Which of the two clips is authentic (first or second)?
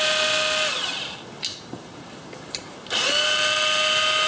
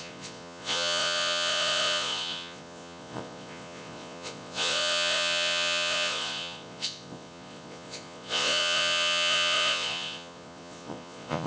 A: first